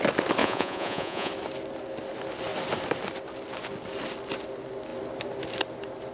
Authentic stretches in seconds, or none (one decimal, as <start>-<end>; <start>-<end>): 0.0-0.4; 1.3-6.1